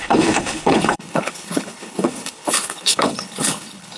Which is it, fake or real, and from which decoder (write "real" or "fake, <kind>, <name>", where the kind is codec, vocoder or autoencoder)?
fake, codec, HILCodec